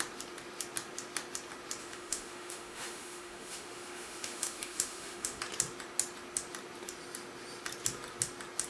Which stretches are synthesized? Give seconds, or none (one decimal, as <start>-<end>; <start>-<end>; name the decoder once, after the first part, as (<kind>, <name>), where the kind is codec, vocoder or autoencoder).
1.8-5.4 (autoencoder, DAC-VAE)

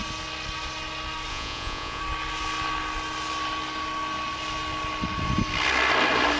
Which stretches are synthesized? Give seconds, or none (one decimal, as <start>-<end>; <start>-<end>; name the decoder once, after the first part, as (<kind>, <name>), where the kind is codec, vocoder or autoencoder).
1.3-2.0 (vocoder, Vocos)

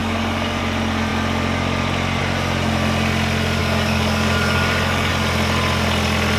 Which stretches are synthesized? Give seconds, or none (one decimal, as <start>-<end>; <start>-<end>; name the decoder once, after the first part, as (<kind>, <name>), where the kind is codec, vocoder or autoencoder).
0.0-0.6 (codec, DAC); 3.6-5.1

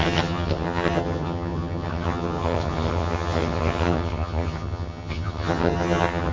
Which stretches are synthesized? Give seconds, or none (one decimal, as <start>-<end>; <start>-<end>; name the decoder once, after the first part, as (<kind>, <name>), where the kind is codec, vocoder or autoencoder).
0.0-6.3 (vocoder, HiFi-GAN)